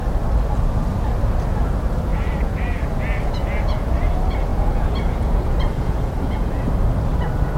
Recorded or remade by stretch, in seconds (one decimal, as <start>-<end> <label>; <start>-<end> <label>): 0.0-2.1 recorded; 2.1-4.1 remade; 4.1-4.5 recorded; 4.5-6.7 remade; 6.7-7.6 recorded